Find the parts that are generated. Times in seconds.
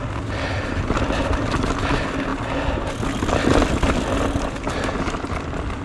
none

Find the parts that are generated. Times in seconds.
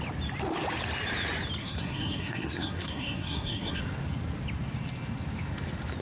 1.6-3.8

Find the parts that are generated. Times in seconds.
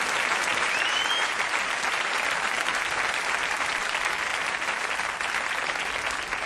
0.5-2.8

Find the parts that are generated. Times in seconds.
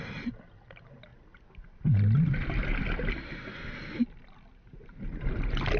none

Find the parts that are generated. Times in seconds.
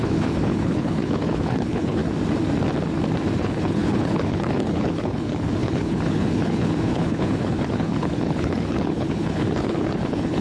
0.0-2.0; 3.4-10.4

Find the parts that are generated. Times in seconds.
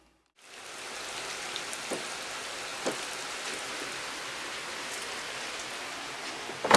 none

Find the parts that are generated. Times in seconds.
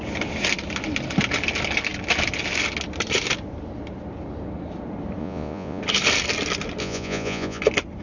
5.2-5.8; 6.8-7.6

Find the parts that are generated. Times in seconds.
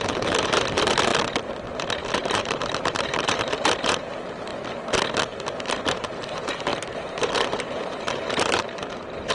0.0-1.1; 1.8-4.5; 5.8-9.3